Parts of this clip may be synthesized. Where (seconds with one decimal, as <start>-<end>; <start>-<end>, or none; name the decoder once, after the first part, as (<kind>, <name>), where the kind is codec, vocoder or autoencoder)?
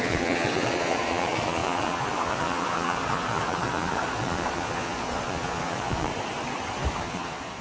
0.0-6.1 (vocoder, Vocos); 6.9-7.6